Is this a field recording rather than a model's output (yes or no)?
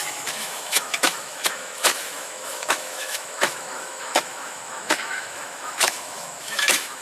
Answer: no